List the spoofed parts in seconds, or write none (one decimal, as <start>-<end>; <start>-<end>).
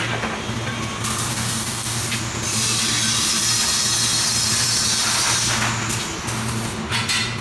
1.3-2.0